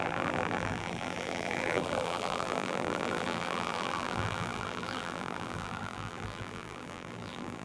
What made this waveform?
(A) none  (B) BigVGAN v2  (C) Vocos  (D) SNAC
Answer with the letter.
B